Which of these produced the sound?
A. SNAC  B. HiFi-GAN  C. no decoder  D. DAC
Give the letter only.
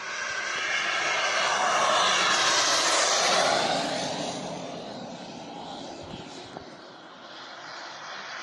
C